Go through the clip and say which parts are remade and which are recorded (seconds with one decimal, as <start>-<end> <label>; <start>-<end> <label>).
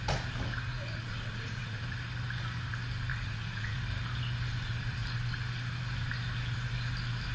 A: 0.0-0.7 recorded; 0.7-1.8 remade; 1.8-3.1 recorded; 3.1-3.8 remade; 3.8-7.3 recorded